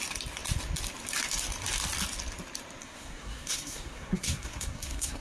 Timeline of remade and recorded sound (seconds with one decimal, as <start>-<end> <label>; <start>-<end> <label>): 0.0-2.8 recorded; 2.8-5.2 remade